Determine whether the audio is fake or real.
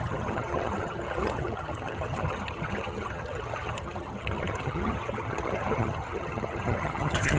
fake